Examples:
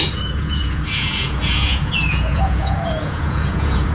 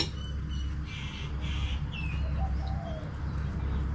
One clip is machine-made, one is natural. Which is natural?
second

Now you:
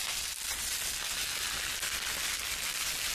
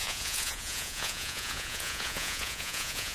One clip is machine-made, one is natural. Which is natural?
first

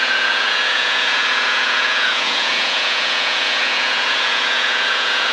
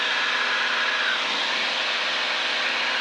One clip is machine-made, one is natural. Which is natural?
second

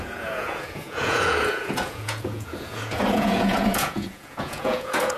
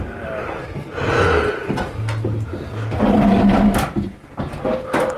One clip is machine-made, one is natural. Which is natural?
second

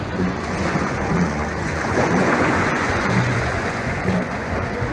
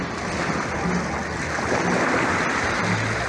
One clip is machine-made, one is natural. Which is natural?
second